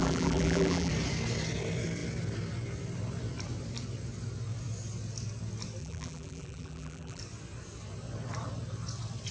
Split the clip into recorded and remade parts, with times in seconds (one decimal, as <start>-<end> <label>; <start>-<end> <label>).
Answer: 0.0-0.9 remade; 0.9-5.8 recorded; 5.8-7.2 remade; 7.2-9.3 recorded